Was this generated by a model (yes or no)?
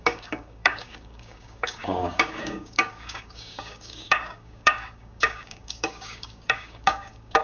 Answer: yes